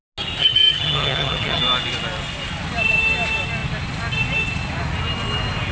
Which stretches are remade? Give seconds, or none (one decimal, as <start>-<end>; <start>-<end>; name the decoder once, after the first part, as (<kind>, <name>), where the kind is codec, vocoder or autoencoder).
0.4-1.6 (vocoder, HiFi-GAN)